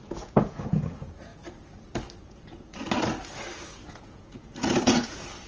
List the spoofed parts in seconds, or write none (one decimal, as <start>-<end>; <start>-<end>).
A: 0.0-1.3; 2.2-2.8; 3.8-5.5